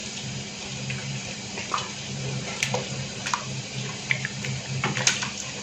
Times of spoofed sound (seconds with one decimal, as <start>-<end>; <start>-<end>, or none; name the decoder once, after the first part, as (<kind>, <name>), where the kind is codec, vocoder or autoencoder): 0.0-0.5 (vocoder, BigVGAN v2); 1.0-4.4